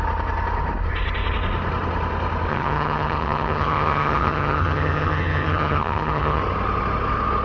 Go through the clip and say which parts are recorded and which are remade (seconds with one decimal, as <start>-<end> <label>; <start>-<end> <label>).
0.0-2.5 recorded; 2.5-6.4 remade; 6.4-7.4 recorded